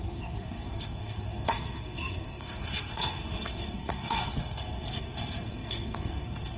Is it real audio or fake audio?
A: fake